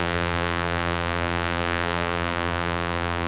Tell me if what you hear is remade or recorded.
remade